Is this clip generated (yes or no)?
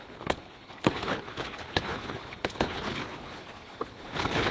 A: yes